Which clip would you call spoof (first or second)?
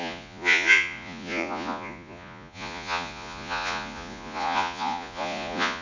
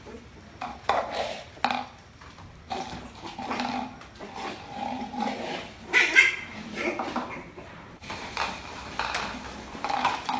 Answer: first